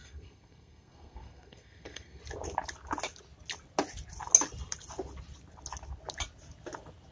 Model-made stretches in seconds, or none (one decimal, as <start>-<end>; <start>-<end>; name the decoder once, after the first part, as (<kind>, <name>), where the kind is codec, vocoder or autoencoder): 0.0-2.2 (codec, SNAC)